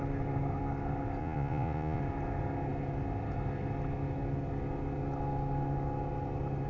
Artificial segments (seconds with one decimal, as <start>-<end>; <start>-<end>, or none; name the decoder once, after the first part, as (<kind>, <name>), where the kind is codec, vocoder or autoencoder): 1.2-2.0 (vocoder, Vocos)